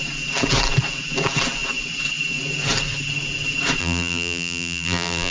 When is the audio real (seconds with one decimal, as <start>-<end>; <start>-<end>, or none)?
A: 0.0-3.8